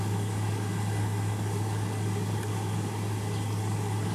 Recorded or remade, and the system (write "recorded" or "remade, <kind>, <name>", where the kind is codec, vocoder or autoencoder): remade, codec, DAC